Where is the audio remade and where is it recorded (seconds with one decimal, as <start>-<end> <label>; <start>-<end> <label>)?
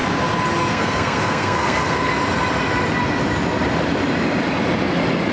0.0-0.7 recorded; 0.7-2.1 remade; 2.1-5.3 recorded